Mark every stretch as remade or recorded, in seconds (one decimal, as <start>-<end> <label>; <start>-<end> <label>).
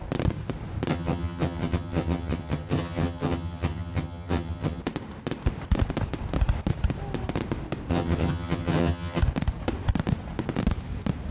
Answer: 0.0-0.9 recorded; 0.9-4.8 remade; 4.8-7.9 recorded; 7.9-9.2 remade; 9.2-11.3 recorded